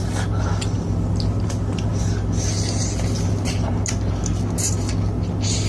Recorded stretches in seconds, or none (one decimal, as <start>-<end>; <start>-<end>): 0.0-5.7